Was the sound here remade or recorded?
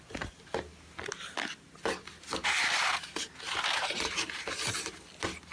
recorded